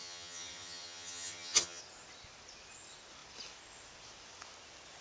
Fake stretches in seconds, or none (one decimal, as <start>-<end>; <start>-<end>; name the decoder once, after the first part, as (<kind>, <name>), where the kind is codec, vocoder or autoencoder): 0.0-1.8 (vocoder, HiFi-GAN)

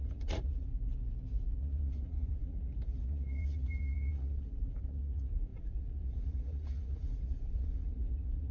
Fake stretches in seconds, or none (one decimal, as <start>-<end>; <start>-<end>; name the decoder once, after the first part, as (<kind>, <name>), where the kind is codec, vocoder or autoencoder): 0.0-0.7 (vocoder, Vocos); 1.5-8.5

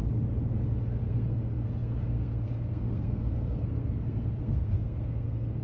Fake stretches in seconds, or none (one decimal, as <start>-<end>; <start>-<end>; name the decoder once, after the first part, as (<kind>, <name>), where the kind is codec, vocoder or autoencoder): 1.0-5.6 (codec, SNAC)

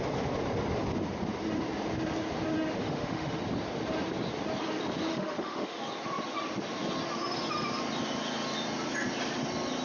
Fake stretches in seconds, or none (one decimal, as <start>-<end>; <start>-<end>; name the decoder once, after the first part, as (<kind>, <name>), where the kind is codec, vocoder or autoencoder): 2.8-3.4 (autoencoder, DAC-VAE); 5.1-5.8

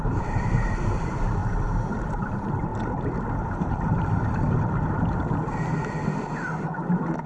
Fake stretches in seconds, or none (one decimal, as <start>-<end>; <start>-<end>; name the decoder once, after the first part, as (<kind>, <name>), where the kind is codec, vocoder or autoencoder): 0.0-1.4 (vocoder, BigVGAN v2); 1.9-2.7

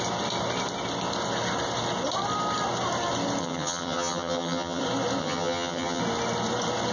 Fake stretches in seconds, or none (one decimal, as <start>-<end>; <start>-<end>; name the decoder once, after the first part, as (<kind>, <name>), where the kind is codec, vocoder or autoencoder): 3.4-4.8 (vocoder, HiFi-GAN); 5.2-6.0

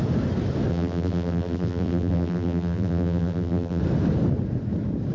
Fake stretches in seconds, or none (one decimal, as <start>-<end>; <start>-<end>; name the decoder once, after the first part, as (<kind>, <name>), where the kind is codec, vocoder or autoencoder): 0.7-3.8 (vocoder, BigVGAN v2)